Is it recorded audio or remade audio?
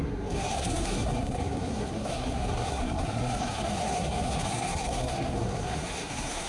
remade